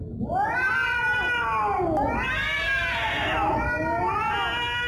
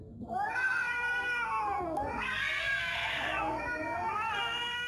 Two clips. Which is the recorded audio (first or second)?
first